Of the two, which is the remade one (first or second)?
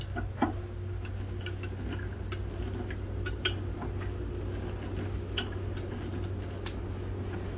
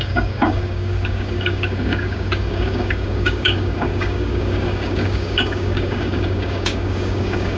second